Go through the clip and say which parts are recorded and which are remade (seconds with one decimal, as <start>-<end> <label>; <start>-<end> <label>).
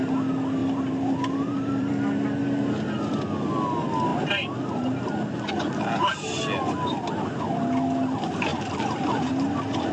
0.0-0.6 recorded; 0.6-1.9 remade; 1.9-8.5 recorded; 8.5-9.3 remade; 9.3-9.9 recorded